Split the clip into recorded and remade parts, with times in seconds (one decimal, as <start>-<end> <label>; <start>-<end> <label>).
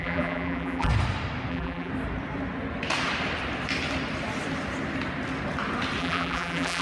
0.0-0.9 remade; 0.9-1.5 recorded; 1.5-1.9 remade; 1.9-6.0 recorded; 6.0-6.8 remade